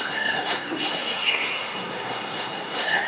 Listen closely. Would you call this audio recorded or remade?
remade